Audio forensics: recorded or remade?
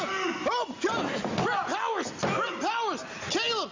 recorded